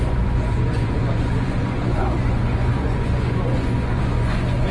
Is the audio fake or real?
fake